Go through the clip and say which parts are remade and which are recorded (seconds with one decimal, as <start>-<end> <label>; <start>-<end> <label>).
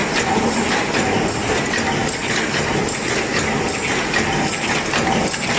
0.0-5.6 recorded